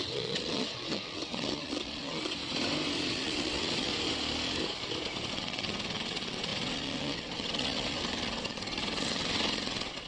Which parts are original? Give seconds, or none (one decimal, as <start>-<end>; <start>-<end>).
2.4-3.1; 3.9-5.3